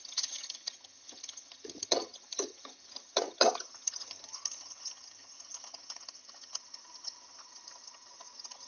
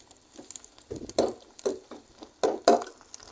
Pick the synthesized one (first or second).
first